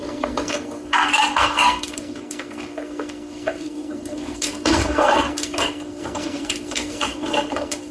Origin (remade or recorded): remade